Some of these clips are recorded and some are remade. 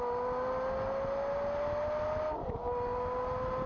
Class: recorded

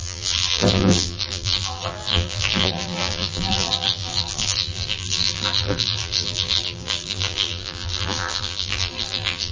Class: remade